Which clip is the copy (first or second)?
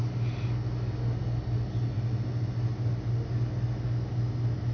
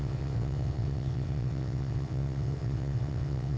second